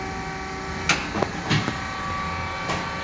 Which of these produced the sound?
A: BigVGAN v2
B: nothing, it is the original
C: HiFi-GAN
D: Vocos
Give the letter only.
B